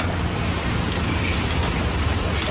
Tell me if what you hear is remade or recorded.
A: recorded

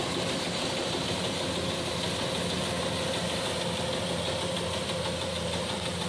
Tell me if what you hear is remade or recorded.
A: recorded